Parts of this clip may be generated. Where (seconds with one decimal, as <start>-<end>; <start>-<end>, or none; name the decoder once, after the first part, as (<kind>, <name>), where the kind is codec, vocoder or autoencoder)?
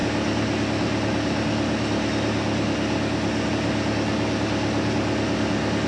none